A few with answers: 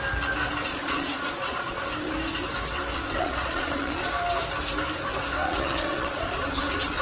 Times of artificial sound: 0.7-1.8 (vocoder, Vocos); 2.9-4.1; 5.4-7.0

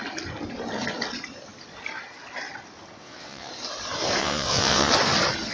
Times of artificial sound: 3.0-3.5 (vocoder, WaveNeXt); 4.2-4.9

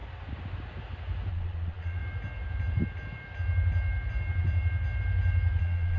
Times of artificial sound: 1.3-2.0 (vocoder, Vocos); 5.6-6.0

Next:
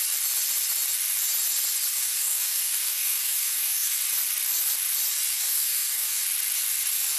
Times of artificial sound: 1.9-3.9 (codec, DAC); 5.3-6.2